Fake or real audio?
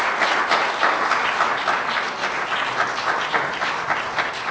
real